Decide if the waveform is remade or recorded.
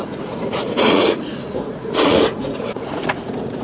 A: remade